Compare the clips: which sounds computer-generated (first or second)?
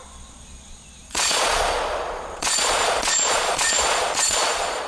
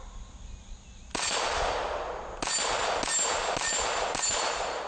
first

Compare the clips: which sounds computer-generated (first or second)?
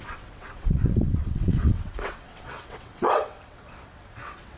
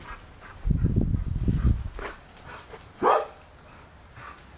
first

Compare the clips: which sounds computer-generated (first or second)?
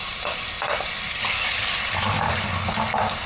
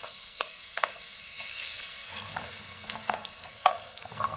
second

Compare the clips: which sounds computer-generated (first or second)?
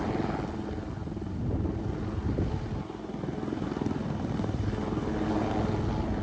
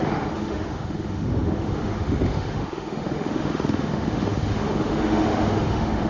second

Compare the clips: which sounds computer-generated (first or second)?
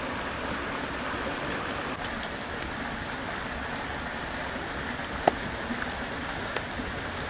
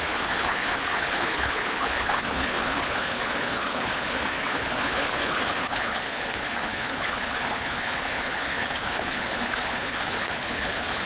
second